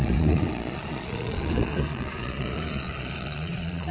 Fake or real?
fake